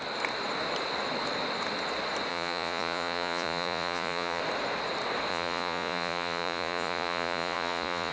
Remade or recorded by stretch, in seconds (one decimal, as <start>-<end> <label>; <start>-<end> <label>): 0.0-2.3 recorded; 2.3-4.4 remade; 4.4-5.3 recorded; 5.3-8.1 remade